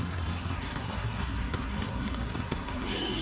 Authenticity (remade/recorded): remade